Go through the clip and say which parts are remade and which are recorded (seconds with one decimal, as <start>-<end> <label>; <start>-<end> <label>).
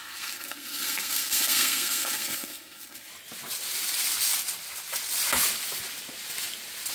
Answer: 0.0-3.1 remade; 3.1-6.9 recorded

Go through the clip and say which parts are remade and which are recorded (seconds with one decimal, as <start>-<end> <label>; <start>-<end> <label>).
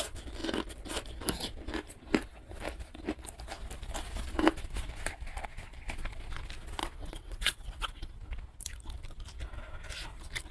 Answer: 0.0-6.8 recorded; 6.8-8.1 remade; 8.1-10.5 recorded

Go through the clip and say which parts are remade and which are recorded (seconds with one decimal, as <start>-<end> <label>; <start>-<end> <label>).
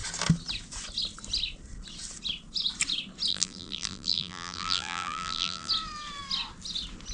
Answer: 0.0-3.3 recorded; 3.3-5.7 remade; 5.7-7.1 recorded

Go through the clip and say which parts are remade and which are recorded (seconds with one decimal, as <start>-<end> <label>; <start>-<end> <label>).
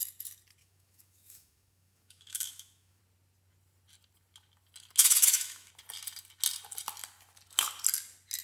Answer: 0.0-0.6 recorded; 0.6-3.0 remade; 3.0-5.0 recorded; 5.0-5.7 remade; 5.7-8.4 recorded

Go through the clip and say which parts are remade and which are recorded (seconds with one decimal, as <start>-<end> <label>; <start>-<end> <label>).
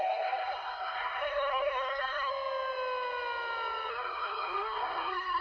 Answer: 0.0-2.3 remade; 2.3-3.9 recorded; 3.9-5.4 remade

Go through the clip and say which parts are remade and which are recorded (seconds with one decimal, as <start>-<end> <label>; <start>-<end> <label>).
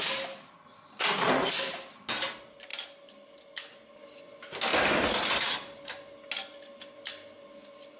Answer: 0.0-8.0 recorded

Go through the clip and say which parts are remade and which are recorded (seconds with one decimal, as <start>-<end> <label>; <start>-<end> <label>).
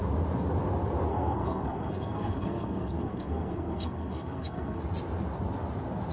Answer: 0.0-1.1 recorded; 1.1-4.8 remade; 4.8-6.1 recorded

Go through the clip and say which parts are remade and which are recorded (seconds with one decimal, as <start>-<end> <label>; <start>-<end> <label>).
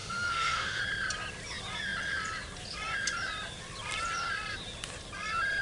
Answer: 0.0-0.8 remade; 0.8-5.6 recorded